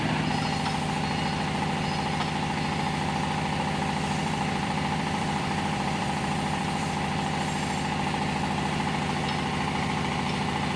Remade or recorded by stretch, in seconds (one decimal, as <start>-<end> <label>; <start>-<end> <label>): 0.0-4.2 recorded; 4.2-6.9 remade; 6.9-10.8 recorded